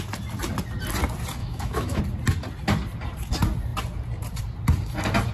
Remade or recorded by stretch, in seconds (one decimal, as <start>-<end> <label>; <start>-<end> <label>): 0.0-1.4 recorded; 1.4-2.0 remade; 2.0-5.3 recorded